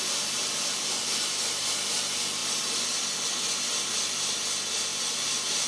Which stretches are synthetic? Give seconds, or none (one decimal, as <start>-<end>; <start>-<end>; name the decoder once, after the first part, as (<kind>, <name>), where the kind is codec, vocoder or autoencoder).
none